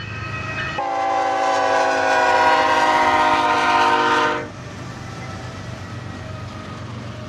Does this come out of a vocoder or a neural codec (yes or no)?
no